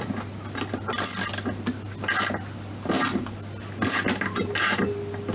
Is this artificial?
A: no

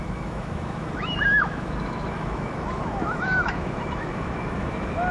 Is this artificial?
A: yes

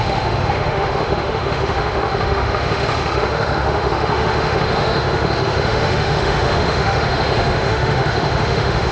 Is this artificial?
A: yes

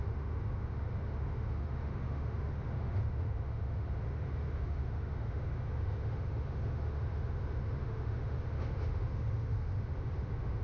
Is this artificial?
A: yes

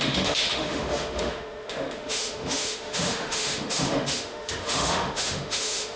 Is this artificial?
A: yes